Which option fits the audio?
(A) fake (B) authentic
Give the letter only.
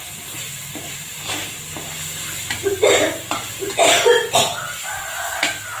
B